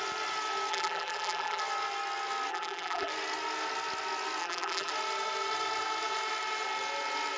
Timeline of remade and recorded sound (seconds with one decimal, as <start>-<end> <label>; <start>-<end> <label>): 0.0-0.7 recorded; 0.7-1.6 remade; 1.6-2.5 recorded; 2.5-3.1 remade; 3.1-4.4 recorded; 4.4-4.9 remade; 4.9-7.4 recorded

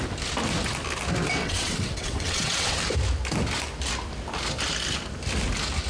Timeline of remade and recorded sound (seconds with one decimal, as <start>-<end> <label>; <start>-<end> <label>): 0.0-1.4 recorded; 1.4-2.8 remade; 2.8-5.9 recorded

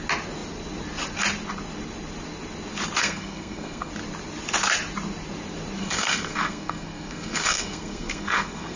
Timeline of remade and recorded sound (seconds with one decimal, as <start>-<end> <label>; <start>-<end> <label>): 0.0-3.0 recorded; 3.0-3.9 remade; 3.9-5.8 recorded; 5.8-8.8 remade

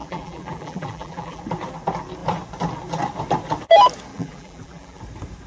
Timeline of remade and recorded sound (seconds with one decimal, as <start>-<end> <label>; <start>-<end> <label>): 0.0-1.4 remade; 1.4-4.1 recorded; 4.1-5.0 remade; 5.0-5.5 recorded